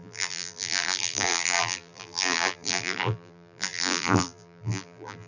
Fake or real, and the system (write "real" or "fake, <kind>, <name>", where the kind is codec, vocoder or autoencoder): fake, vocoder, BigVGAN v2